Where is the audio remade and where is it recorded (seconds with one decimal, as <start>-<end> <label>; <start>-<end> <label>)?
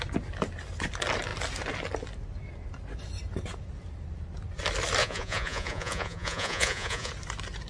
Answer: 0.0-5.0 recorded; 5.0-7.1 remade; 7.1-7.7 recorded